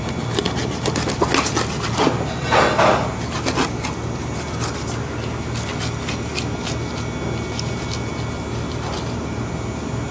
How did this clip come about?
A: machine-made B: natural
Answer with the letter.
B